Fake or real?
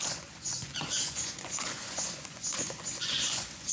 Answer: fake